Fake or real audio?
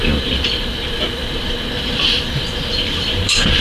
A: fake